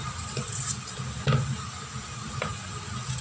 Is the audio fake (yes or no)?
no